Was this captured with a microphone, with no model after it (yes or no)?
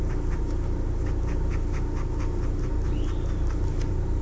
yes